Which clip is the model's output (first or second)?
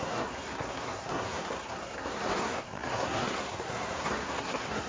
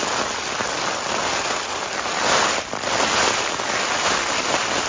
first